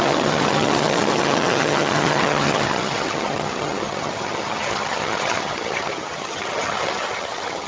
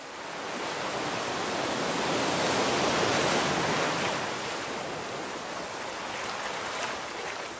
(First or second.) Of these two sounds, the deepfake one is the first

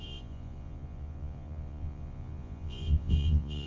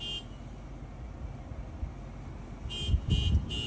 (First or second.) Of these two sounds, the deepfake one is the first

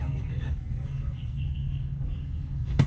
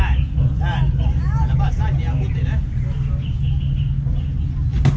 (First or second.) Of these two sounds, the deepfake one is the first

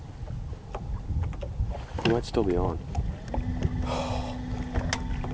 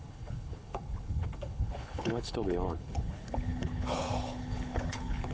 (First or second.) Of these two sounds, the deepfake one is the second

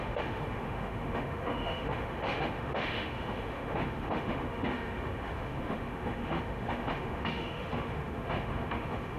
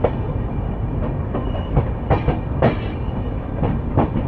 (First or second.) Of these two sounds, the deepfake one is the first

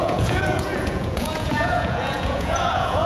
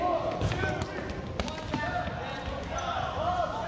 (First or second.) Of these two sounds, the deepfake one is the first